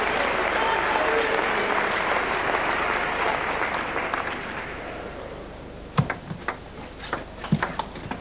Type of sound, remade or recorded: recorded